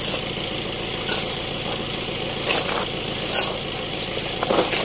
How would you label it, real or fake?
real